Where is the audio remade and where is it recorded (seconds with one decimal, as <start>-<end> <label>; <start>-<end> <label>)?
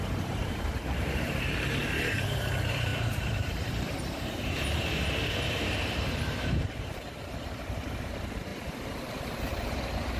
0.0-8.5 remade; 8.5-9.1 recorded; 9.1-10.2 remade